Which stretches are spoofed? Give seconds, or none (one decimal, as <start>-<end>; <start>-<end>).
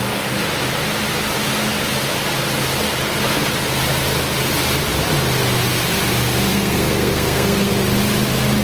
6.5-7.7